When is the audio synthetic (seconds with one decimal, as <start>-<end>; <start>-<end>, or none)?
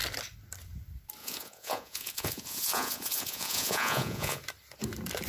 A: 1.2-4.4